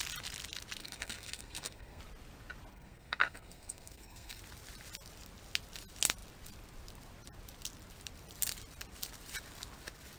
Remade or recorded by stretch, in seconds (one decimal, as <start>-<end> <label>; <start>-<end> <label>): 0.0-0.8 recorded; 0.8-2.0 remade; 2.0-2.7 recorded; 2.7-4.4 remade; 4.4-10.2 recorded